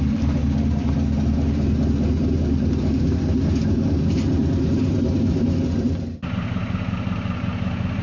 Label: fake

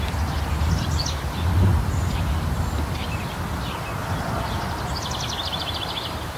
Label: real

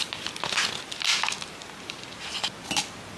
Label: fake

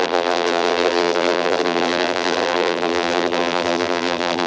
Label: fake